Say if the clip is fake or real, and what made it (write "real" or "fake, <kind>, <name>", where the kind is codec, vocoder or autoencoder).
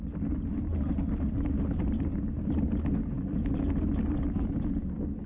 real